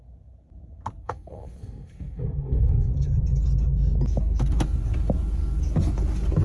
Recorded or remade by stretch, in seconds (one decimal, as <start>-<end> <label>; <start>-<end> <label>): 0.0-1.0 recorded; 1.0-2.9 remade; 2.9-6.4 recorded